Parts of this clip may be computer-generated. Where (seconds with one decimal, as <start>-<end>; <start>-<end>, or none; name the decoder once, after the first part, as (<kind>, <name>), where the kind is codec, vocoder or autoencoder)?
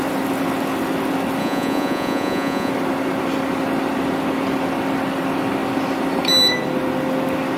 1.4-2.7 (vocoder, Vocos)